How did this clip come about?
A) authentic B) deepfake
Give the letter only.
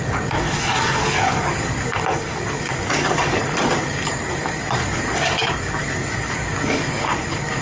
B